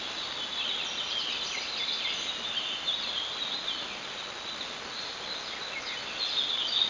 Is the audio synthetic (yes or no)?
no